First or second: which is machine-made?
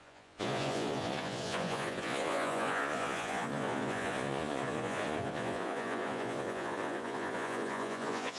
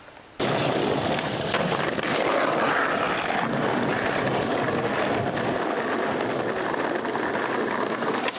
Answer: first